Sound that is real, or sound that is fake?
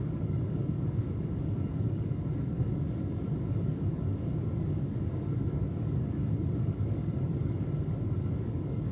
fake